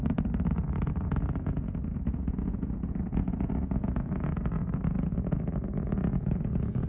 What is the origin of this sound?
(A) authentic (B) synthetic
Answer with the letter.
B